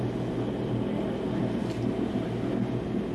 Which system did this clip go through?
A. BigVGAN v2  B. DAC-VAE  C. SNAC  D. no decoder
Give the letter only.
D